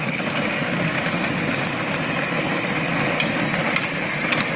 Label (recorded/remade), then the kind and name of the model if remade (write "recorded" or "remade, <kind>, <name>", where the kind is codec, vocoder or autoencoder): recorded